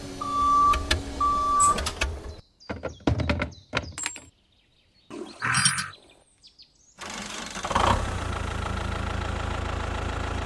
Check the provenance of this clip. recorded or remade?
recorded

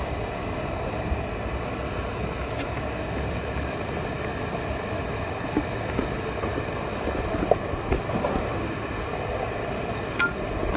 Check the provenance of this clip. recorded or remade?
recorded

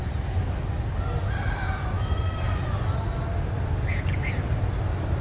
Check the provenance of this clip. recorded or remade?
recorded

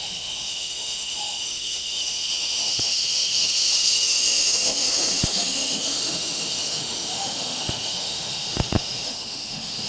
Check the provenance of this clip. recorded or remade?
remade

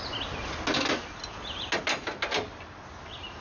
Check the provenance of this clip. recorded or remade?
recorded